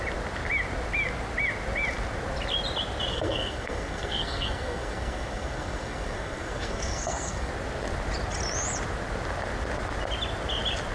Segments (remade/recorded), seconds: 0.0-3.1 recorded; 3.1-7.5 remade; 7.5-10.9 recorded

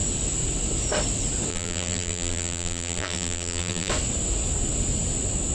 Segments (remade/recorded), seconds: 0.0-1.5 recorded; 1.5-3.9 remade; 3.9-5.5 recorded

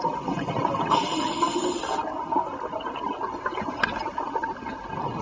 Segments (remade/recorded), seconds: 0.0-5.2 recorded

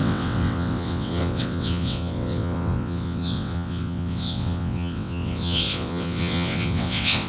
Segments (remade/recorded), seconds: 0.0-7.3 remade

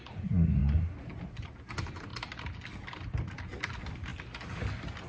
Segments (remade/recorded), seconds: 0.0-5.1 recorded

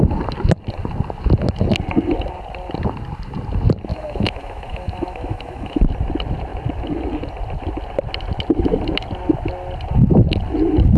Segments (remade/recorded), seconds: 0.0-3.9 recorded; 3.9-5.8 remade; 5.8-11.0 recorded

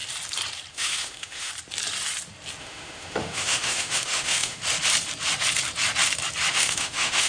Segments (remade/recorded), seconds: 0.0-0.7 recorded; 0.7-1.5 remade; 1.5-2.6 recorded; 2.6-4.6 remade; 4.6-6.5 recorded; 6.5-7.3 remade

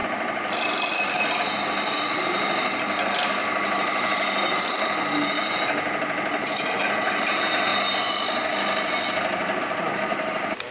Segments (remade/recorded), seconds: 0.0-1.3 remade; 1.3-3.4 recorded; 3.4-4.6 remade; 4.6-10.1 recorded; 10.1-10.7 remade